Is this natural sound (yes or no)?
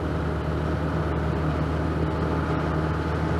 yes